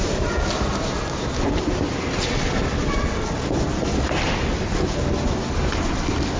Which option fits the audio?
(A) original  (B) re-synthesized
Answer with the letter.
A